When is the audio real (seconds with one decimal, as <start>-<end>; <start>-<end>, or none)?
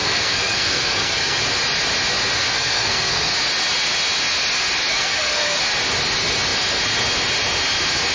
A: 1.4-2.4; 3.3-4.9; 5.6-8.1